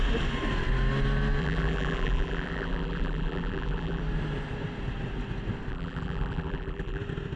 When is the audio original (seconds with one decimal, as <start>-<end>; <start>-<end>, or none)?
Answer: 0.0-1.4; 4.0-5.7; 7.0-7.4